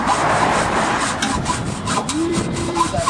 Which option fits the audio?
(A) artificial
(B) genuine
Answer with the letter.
A